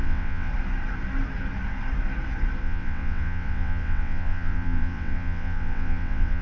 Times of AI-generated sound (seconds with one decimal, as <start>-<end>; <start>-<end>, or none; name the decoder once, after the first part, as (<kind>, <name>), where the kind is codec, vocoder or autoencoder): 0.0-0.5 (vocoder, WaveNeXt); 2.6-6.4